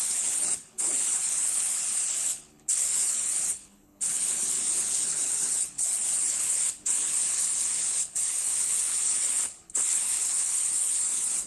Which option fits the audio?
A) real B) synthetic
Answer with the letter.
B